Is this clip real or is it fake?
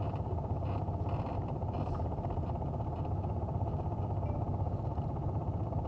real